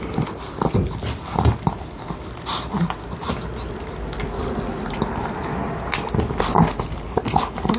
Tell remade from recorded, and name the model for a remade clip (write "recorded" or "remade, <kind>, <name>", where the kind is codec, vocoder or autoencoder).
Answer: recorded